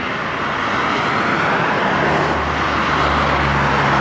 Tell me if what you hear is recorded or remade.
recorded